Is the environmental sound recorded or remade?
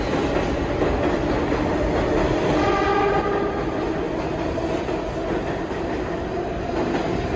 recorded